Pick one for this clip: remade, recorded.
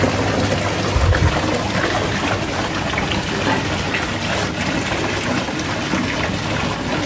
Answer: recorded